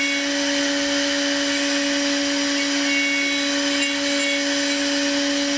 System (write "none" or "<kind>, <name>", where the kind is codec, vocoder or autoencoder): none